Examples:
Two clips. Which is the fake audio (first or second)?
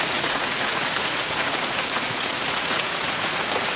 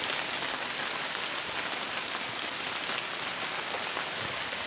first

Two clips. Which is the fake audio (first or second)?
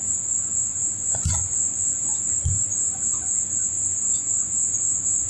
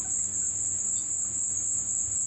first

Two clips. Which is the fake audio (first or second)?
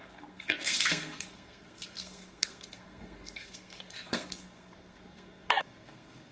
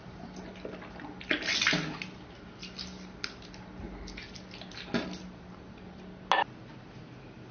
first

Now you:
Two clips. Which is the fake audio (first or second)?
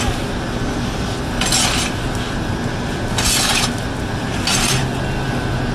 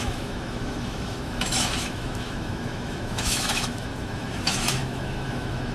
second